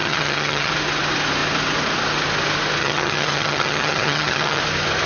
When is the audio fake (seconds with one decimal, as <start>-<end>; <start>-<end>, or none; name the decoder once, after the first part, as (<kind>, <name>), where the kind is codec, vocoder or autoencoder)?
0.0-0.7 (vocoder, HiFi-GAN); 2.8-4.6